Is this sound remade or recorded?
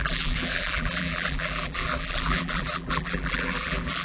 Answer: remade